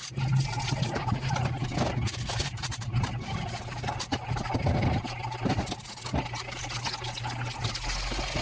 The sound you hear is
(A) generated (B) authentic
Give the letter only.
B